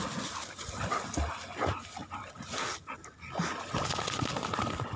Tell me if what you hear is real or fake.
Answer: real